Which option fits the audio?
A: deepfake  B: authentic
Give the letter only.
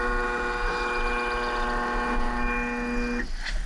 B